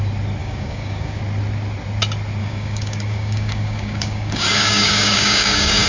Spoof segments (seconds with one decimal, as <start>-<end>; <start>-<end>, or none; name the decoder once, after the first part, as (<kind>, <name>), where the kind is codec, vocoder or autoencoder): 0.4-1.2 (codec, DAC); 2.4-5.9